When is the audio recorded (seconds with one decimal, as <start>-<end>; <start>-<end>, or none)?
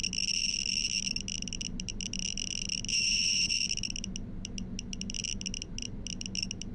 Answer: 0.0-2.9; 3.5-6.7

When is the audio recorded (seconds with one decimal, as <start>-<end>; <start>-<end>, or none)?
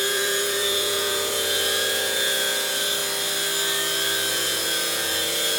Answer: 3.0-4.3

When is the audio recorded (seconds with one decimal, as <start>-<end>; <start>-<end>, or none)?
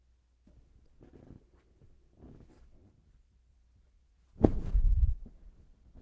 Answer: 0.0-3.5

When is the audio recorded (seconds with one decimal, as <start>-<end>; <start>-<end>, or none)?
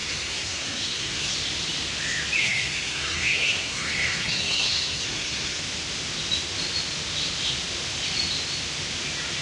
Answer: 1.3-2.4; 5.6-9.4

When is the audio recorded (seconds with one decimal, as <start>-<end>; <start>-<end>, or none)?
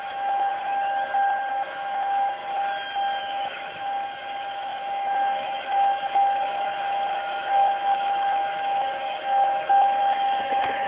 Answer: 0.5-1.5; 2.4-3.2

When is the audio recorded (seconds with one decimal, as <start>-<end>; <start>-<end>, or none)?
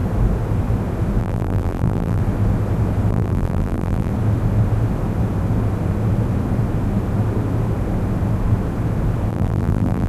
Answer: 0.0-1.2; 2.2-3.1; 4.1-9.3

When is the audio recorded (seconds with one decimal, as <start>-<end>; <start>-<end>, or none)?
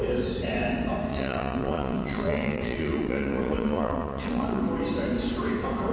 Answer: 0.0-1.1; 4.6-5.9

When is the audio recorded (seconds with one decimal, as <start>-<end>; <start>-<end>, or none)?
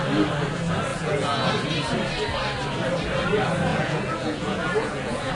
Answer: 0.0-0.9; 1.5-3.7